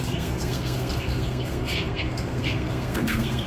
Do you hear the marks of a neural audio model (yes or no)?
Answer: yes